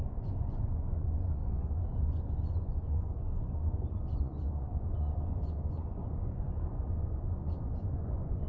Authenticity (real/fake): fake